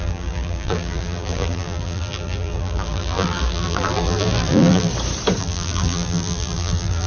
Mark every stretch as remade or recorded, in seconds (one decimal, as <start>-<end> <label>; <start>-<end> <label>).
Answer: 0.0-4.9 remade; 4.9-5.4 recorded; 5.4-7.1 remade